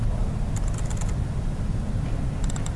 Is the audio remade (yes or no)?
no